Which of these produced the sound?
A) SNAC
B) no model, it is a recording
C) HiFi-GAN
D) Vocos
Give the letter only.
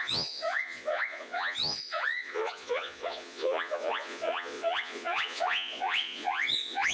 D